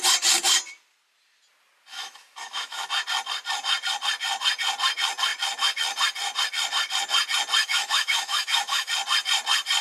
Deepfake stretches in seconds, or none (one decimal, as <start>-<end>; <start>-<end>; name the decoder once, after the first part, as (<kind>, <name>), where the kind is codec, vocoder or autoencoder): 1.9-2.9 (autoencoder, DAC-VAE); 7.6-8.9